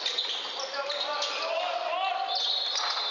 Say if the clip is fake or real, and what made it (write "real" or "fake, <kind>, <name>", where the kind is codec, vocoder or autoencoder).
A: real